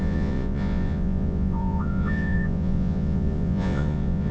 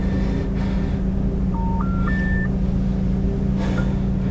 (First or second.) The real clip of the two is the second